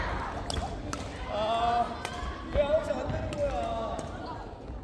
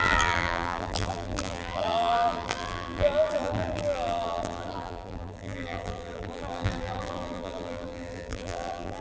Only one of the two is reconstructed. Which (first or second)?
second